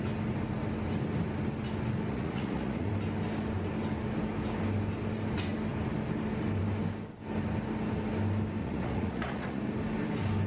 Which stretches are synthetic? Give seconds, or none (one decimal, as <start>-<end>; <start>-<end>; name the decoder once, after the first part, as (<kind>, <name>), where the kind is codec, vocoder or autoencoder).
2.1-2.9 (vocoder, Vocos); 8.6-9.6